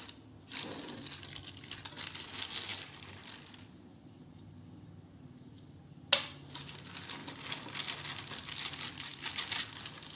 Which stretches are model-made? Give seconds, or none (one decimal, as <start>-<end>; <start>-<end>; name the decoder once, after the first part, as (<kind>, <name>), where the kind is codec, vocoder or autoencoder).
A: none